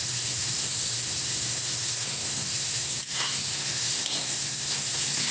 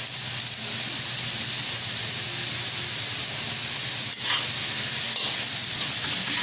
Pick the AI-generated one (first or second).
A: first